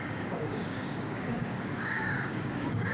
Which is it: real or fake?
fake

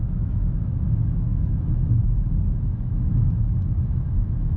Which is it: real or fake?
fake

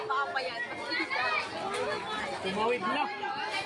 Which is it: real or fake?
real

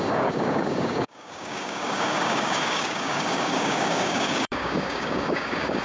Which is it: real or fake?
fake